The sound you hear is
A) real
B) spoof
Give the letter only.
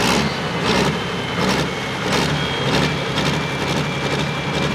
A